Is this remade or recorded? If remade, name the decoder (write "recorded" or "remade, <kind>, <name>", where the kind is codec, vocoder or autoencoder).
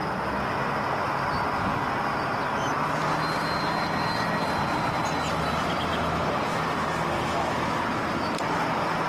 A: recorded